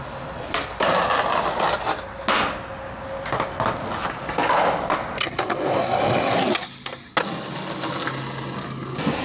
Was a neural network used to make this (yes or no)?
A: no